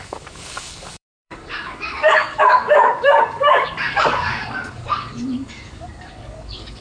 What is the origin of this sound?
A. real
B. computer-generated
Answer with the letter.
B